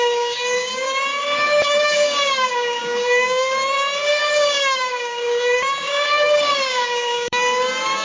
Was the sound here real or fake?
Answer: fake